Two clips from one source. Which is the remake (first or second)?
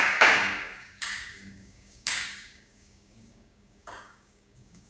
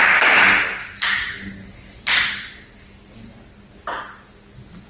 first